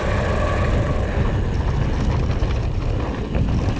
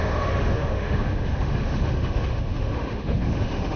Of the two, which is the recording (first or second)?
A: first